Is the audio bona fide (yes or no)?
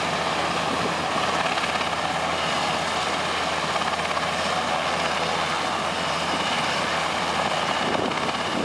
yes